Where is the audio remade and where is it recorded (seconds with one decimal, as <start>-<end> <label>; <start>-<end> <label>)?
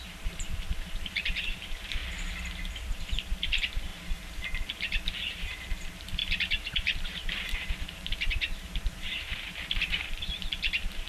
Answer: 0.0-2.0 remade; 2.0-2.9 recorded; 2.9-11.1 remade